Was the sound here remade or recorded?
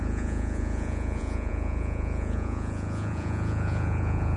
remade